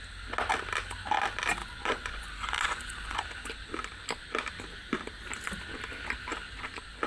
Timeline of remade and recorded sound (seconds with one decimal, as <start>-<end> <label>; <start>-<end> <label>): 0.0-1.6 recorded; 1.6-3.2 remade; 3.2-7.1 recorded